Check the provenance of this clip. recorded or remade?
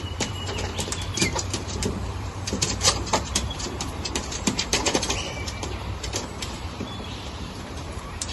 remade